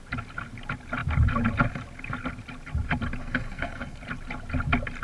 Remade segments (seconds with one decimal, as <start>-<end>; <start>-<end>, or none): 3.2-4.0